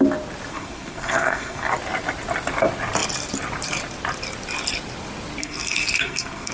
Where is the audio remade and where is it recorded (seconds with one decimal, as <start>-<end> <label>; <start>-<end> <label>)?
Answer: 0.0-0.5 recorded; 0.5-1.7 remade; 1.7-5.4 recorded; 5.4-6.5 remade